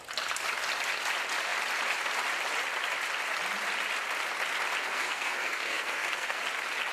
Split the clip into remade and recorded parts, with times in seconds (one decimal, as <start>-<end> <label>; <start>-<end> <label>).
0.0-4.8 recorded; 4.8-6.4 remade; 6.4-6.9 recorded